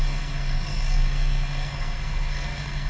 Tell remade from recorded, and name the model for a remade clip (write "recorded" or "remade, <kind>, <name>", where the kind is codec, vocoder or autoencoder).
remade, codec, SNAC